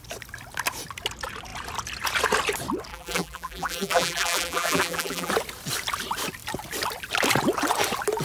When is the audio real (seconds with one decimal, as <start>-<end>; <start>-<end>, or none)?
0.0-2.9; 5.3-8.2